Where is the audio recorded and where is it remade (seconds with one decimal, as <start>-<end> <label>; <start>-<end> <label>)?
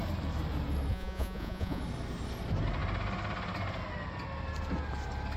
0.0-0.9 recorded; 0.9-1.8 remade; 1.8-5.4 recorded